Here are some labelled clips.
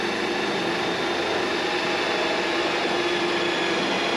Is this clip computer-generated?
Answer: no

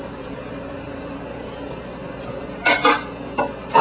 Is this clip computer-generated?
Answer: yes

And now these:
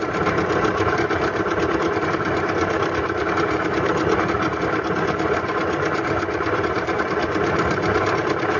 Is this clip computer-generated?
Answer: yes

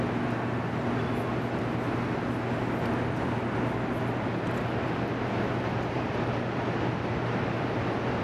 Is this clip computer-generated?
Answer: no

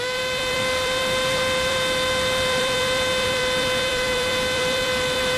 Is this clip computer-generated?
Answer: yes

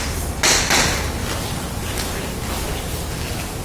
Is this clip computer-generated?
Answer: no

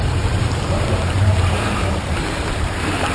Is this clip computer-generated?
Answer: yes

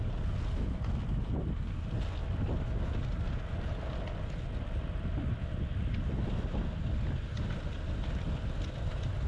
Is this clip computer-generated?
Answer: no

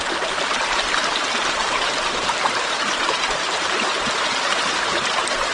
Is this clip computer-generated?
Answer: yes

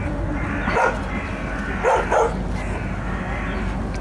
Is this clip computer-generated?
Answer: no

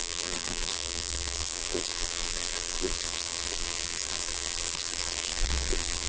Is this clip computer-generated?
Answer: yes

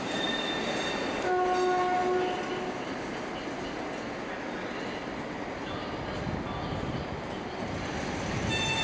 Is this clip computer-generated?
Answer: no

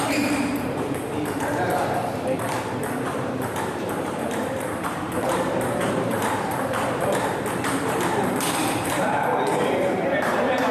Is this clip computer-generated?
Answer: yes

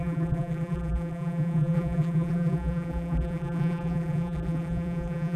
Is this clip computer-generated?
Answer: yes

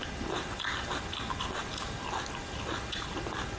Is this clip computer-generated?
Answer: no